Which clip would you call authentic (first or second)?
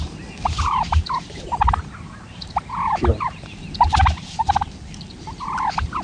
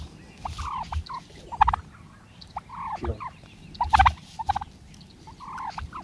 second